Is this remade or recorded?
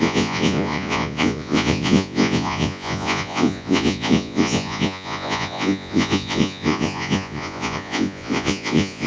remade